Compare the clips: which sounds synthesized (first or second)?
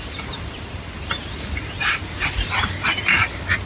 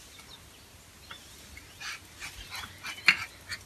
first